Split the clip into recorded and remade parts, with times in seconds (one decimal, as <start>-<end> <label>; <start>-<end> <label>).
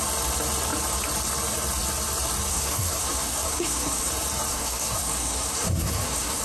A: 0.0-2.5 recorded; 2.5-4.1 remade; 4.1-4.5 recorded; 4.5-6.4 remade